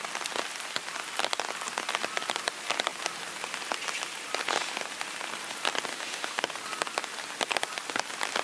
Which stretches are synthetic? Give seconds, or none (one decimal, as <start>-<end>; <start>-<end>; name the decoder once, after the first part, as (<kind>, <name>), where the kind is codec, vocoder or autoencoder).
5.9-6.4 (autoencoder, DAC-VAE)